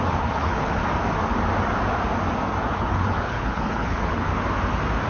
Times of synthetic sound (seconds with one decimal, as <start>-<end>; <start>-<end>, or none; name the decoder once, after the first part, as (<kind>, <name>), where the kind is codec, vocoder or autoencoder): 0.0-0.8 (codec, HILCodec); 2.7-4.3